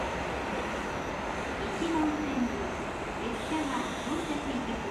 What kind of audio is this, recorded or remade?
recorded